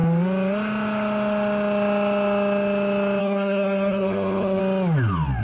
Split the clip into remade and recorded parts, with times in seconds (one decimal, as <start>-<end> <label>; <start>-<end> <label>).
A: 0.0-3.2 recorded; 3.2-4.6 remade; 4.6-5.4 recorded